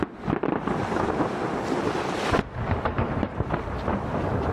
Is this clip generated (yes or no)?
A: no